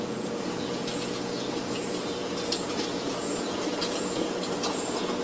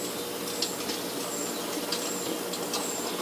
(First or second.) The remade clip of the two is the first